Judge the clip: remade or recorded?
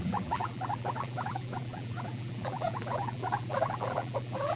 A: remade